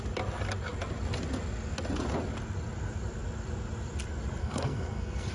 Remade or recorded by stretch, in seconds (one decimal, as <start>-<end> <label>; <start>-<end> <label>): 0.0-4.4 recorded; 4.4-5.3 remade